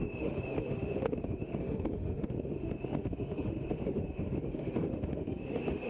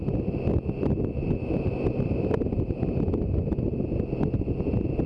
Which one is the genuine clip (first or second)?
second